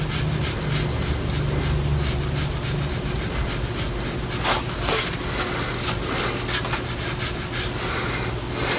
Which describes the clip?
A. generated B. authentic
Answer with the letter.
B